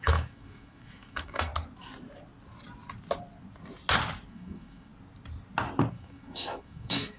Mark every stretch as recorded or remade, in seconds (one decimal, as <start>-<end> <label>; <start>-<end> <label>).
0.0-1.5 remade; 1.5-4.3 recorded; 4.3-4.9 remade; 4.9-5.9 recorded; 5.9-7.2 remade